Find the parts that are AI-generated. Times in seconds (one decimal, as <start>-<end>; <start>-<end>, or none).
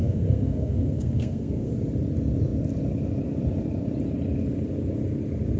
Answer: 0.0-1.7